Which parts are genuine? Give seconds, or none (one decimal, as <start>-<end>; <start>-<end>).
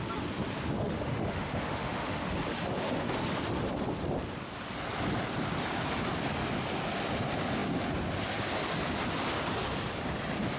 0.0-0.8; 2.2-10.6